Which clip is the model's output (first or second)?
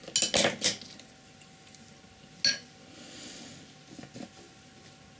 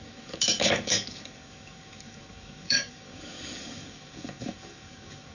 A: second